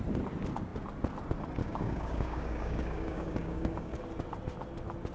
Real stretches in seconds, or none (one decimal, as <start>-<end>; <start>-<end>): 0.0-1.6; 4.0-5.1